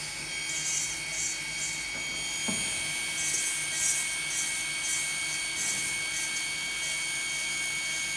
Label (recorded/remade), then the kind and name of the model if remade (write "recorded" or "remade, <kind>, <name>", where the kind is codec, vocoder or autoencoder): recorded